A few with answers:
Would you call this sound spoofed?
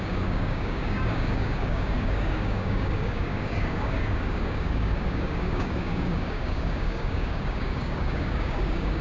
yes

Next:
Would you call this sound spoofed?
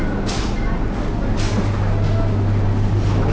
no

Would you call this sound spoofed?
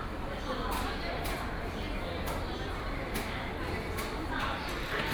no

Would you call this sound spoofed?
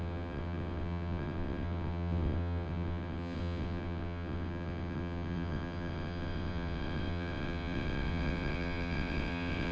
yes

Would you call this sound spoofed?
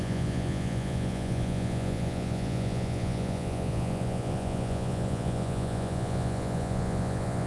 yes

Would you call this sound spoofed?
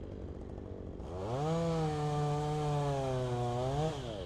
no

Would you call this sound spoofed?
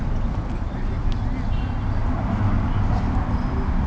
no